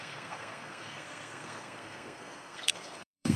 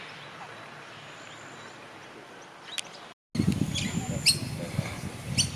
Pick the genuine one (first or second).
second